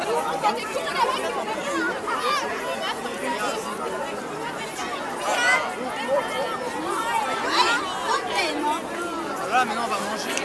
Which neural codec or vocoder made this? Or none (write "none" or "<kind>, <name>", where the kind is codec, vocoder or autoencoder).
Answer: none